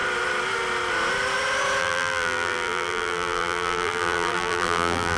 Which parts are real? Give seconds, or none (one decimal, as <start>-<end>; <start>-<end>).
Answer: 0.0-1.8